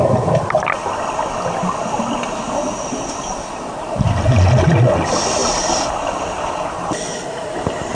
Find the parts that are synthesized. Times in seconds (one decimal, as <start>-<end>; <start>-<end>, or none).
none